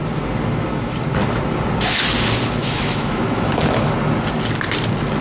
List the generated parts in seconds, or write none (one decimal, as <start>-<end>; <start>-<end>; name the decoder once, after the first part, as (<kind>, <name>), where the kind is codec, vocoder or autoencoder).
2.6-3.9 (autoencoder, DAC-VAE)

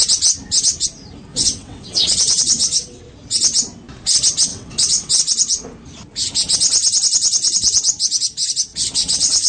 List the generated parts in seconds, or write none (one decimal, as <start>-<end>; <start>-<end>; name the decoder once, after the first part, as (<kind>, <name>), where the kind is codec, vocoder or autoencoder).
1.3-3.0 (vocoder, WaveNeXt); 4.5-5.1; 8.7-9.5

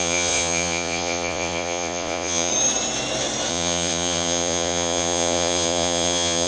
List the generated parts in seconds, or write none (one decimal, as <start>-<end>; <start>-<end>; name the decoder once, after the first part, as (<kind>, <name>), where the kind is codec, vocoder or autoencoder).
0.0-2.5 (vocoder, Vocos); 3.5-6.5

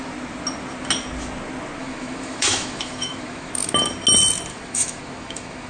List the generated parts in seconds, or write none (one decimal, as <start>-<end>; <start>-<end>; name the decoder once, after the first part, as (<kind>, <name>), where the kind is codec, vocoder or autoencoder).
1.8-3.5 (autoencoder, DAC-VAE); 4.5-5.7

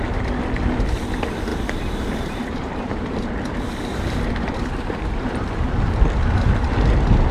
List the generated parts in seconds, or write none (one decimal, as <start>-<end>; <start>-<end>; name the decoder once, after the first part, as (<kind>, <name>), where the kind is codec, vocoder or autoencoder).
1.5-5.7 (vocoder, BigVGAN v2)

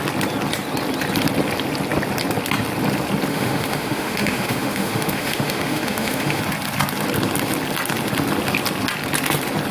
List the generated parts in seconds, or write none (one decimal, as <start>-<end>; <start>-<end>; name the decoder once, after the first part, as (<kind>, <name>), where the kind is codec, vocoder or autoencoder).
3.3-6.4 (autoencoder, DAC-VAE)

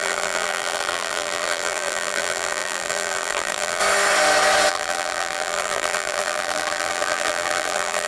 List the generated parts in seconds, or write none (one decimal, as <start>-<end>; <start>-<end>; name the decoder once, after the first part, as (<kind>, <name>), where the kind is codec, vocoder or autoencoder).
0.0-3.8 (vocoder, BigVGAN v2); 4.7-8.1